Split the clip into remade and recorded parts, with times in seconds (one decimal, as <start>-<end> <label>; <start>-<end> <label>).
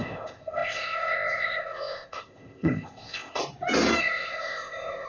0.0-3.4 remade; 3.4-4.0 recorded; 4.0-5.1 remade